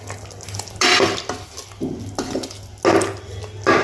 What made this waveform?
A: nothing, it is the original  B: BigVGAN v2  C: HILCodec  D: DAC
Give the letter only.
A